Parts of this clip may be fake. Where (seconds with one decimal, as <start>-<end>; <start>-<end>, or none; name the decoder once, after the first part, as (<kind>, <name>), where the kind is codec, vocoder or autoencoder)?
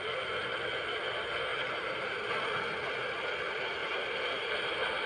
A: 1.5-2.2 (vocoder, BigVGAN v2); 3.8-4.5